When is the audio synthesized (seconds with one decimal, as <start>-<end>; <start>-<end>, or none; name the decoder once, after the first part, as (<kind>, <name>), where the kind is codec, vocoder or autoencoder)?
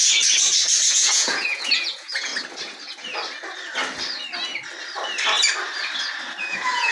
0.9-2.3 (vocoder, Vocos); 6.4-6.9